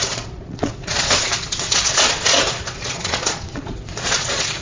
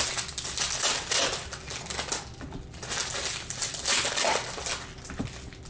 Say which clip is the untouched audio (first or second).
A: second